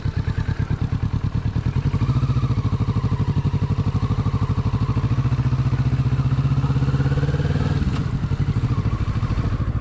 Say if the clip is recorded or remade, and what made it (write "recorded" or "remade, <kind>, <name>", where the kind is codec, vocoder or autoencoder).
recorded